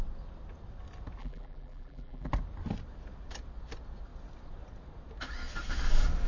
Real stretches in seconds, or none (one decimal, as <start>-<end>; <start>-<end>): 0.0-1.2; 2.3-6.3